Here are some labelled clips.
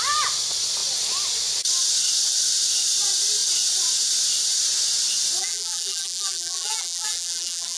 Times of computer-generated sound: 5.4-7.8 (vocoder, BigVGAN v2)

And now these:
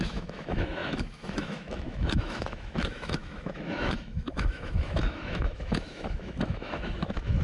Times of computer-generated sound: 0.0-7.4 (autoencoder, DAC-VAE)

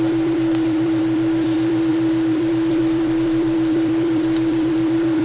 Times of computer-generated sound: 0.0-5.2 (vocoder, BigVGAN v2)